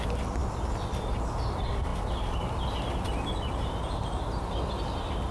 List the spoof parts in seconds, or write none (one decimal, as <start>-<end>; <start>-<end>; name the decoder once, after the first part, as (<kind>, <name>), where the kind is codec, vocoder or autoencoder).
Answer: none